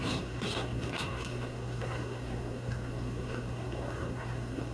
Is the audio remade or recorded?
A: remade